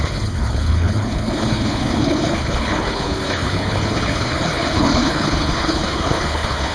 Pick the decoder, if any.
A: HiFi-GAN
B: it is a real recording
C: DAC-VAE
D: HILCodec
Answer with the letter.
D